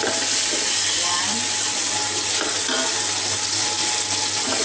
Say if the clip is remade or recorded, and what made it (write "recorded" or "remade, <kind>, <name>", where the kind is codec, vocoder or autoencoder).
recorded